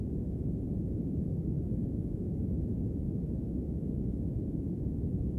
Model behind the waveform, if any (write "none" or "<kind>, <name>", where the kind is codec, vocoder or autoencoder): autoencoder, DAC-VAE